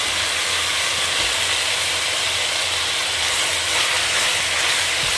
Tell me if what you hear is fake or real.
real